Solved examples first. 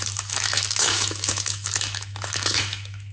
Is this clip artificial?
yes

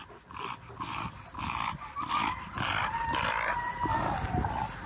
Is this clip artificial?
no